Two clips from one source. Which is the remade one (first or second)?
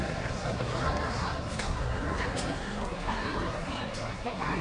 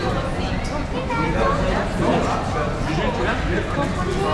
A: first